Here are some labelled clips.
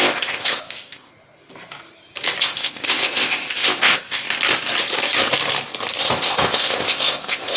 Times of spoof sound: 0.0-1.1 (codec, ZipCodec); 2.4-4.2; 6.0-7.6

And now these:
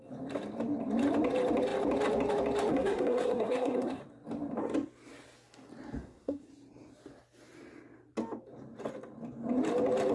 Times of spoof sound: 2.7-4.0 (codec, SNAC); 6.0-6.5

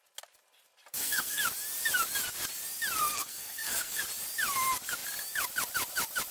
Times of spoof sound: 0.9-1.4 (codec, SNAC); 3.0-4.0

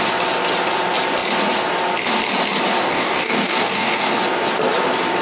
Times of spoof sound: 2.9-4.1 (codec, DAC)

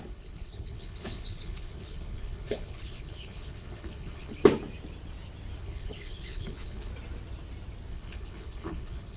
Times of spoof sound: 0.0-4.4 (codec, HILCodec); 5.6-6.9; 7.9-9.2

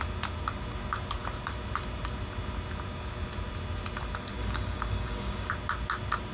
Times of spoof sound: 4.4-5.5 (codec, DAC)

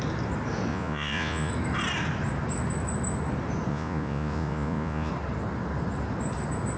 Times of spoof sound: 0.7-1.5 (vocoder, Vocos); 3.7-5.1

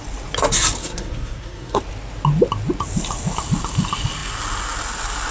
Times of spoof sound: 0.8-1.8 (codec, SNAC)